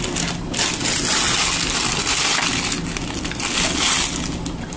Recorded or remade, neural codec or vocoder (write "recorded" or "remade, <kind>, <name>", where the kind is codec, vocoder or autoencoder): recorded